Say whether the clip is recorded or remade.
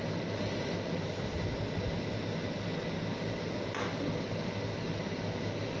recorded